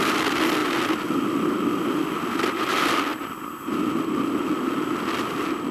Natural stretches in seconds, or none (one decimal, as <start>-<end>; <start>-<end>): 0.0-5.7